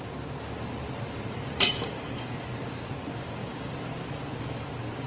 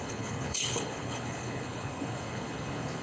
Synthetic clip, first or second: second